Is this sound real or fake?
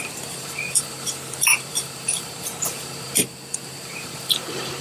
fake